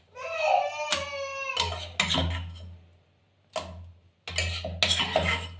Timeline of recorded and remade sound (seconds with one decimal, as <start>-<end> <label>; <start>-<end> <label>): 0.0-5.6 recorded